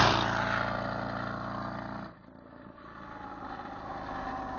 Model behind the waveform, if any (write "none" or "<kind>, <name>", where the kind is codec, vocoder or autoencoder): none